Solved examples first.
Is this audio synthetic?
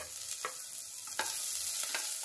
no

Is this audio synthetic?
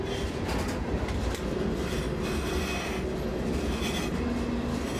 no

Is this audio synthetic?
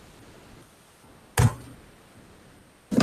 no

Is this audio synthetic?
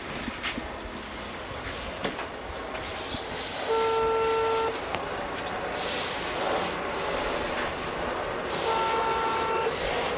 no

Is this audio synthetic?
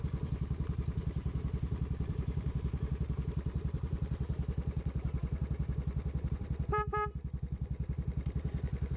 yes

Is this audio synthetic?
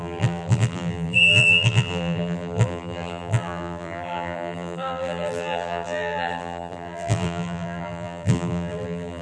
yes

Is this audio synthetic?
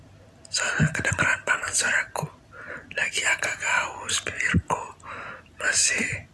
no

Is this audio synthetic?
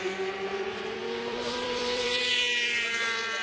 yes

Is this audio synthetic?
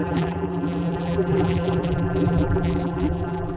yes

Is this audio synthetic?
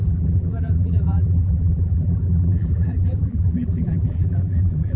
yes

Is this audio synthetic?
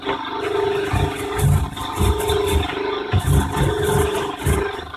no